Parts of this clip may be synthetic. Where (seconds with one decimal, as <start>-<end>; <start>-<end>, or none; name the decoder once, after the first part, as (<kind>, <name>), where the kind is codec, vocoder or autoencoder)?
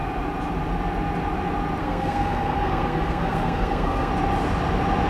1.8-4.1 (codec, SNAC)